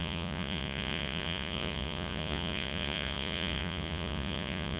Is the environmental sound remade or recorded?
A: remade